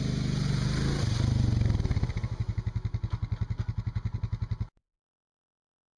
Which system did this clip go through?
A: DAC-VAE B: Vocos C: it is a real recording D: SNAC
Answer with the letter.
C